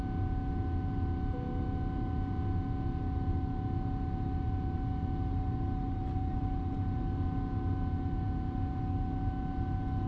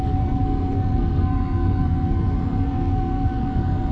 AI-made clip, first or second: second